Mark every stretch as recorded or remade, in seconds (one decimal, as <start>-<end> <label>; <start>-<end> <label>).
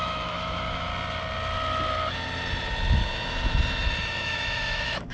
0.0-0.9 remade; 0.9-4.0 recorded; 4.0-5.1 remade